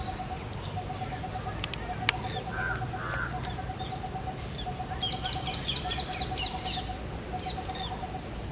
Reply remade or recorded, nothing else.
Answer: recorded